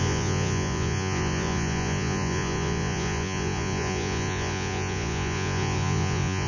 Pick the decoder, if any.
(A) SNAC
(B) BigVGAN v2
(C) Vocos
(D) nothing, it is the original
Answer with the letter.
C